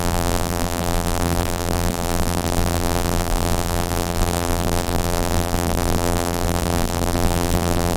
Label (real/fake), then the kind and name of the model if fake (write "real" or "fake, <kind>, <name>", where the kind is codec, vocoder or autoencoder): fake, vocoder, BigVGAN v2